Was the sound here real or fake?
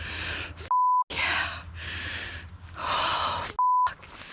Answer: real